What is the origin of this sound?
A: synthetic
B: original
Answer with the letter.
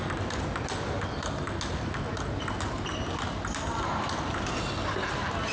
B